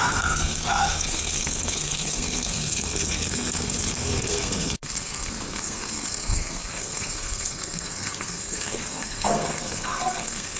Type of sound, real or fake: fake